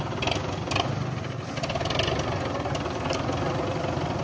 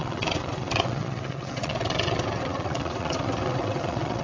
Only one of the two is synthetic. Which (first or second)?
second